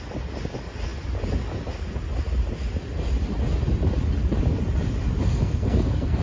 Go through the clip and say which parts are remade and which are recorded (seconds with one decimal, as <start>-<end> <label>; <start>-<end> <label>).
0.0-5.2 recorded; 5.2-6.2 remade